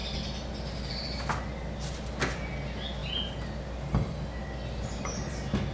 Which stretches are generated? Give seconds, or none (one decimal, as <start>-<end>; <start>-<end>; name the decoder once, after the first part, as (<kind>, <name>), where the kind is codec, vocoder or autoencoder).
none